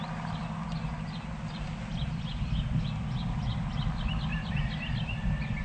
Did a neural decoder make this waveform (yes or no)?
no